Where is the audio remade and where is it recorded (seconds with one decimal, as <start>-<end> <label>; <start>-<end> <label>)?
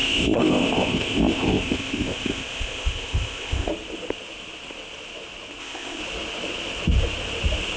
0.0-3.7 remade; 3.7-5.6 recorded; 5.6-6.0 remade; 6.0-7.8 recorded